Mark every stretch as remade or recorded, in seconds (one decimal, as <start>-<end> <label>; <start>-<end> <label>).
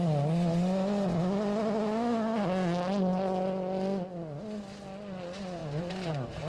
0.0-5.6 recorded; 5.6-6.5 remade